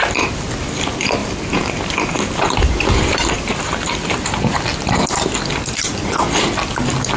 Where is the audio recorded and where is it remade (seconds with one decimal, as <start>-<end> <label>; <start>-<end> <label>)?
0.0-1.2 recorded; 1.2-4.6 remade; 4.6-7.2 recorded